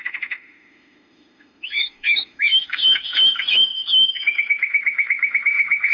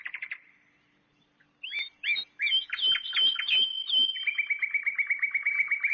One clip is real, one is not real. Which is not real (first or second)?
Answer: first